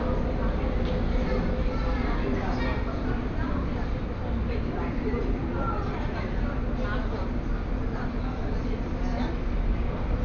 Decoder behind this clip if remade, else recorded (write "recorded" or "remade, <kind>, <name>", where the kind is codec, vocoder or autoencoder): recorded